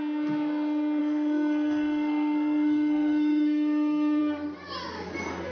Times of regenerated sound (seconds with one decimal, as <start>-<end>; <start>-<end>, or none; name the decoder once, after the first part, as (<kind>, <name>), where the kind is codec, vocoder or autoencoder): 1.0-4.2 (codec, SNAC)